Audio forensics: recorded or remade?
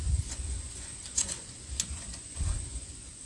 remade